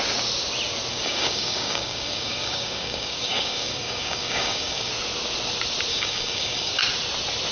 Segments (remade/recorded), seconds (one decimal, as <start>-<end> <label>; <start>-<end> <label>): 0.0-0.9 recorded; 0.9-4.9 remade; 4.9-5.9 recorded; 5.9-6.8 remade; 6.8-7.5 recorded